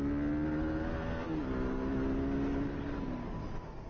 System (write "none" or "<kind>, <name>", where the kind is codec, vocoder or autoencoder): none